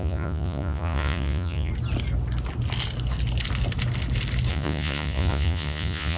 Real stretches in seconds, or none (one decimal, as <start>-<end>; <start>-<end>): 1.7-4.5